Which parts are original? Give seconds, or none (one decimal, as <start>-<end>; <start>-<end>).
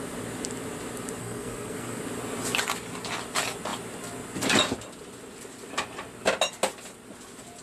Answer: 0.0-1.2; 2.0-7.6